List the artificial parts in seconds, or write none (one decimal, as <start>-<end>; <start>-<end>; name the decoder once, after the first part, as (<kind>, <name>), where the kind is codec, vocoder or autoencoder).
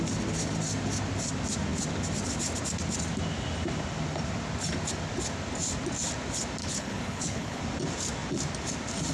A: 6.6-7.6 (codec, HILCodec)